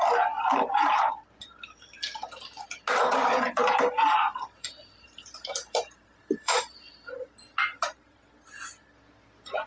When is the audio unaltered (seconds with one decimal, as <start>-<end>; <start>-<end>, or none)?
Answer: 0.0-3.2; 6.9-7.7; 8.2-9.7